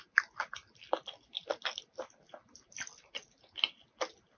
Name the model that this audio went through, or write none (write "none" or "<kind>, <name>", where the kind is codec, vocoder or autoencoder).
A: none